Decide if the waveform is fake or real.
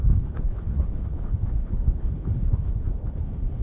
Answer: fake